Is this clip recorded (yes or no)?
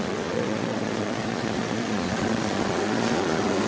no